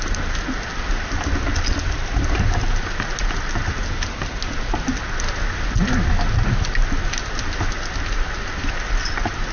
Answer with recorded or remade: recorded